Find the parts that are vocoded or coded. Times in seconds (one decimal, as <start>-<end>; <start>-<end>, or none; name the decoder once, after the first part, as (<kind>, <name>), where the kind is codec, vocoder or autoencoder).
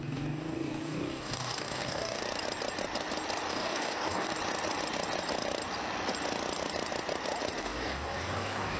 0.0-2.2 (codec, DAC); 3.5-4.3; 7.6-8.8